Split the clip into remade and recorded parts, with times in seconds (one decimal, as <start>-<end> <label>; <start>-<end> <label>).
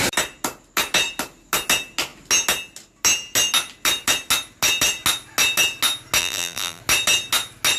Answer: 0.0-6.2 recorded; 6.2-6.8 remade; 6.8-7.8 recorded